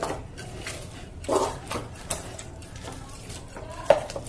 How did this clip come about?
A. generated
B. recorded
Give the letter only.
B